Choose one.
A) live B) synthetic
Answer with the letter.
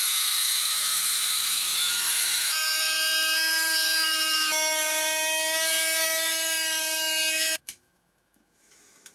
B